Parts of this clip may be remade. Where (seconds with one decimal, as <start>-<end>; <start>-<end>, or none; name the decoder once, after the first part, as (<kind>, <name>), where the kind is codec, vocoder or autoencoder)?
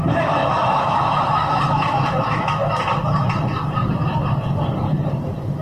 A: 0.4-2.8 (autoencoder, DAC-VAE)